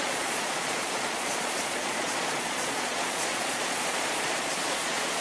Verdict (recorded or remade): remade